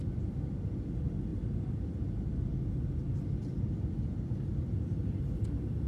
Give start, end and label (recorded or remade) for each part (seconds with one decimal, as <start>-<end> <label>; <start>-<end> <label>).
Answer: 0.0-5.9 recorded